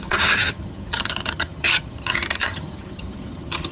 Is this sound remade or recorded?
remade